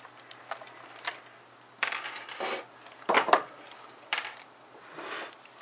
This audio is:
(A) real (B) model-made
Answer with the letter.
B